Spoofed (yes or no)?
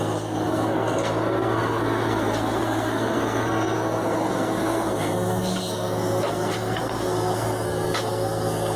yes